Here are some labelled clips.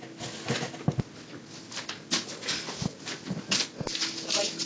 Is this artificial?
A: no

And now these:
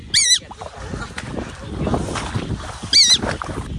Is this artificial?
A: no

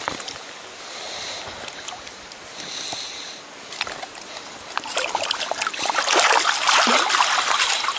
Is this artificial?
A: no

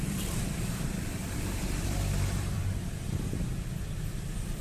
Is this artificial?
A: yes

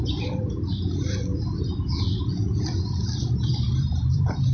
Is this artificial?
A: yes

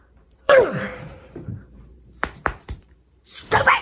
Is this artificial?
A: yes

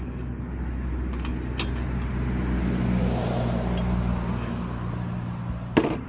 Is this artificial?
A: no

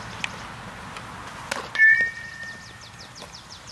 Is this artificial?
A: no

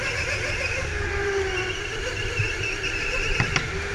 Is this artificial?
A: no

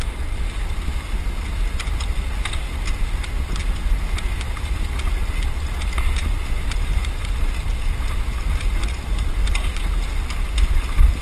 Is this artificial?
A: no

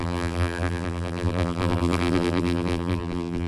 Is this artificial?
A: yes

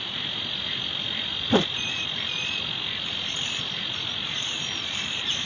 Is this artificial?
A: no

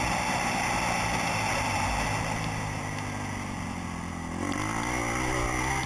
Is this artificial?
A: no